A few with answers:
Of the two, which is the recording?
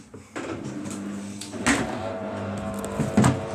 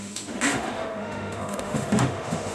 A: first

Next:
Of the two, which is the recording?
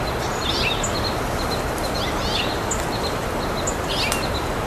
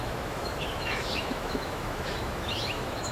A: first